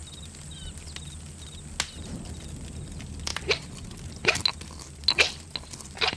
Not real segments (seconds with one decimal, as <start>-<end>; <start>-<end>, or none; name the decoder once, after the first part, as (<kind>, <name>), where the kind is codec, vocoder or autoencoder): none